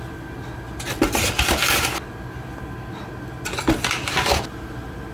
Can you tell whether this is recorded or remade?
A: recorded